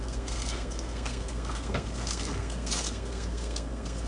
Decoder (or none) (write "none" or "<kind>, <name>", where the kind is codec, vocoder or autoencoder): codec, SNAC